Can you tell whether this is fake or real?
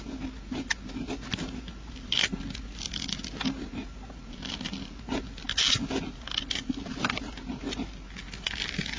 real